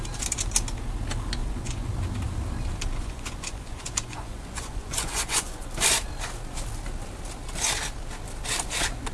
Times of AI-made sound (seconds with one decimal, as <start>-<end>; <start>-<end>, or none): 1.4-1.9; 3.0-5.7